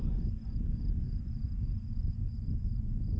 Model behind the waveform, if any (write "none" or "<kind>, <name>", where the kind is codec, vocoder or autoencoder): none